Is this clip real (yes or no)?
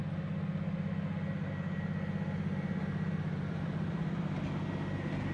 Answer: yes